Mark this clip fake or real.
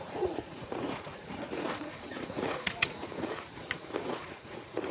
fake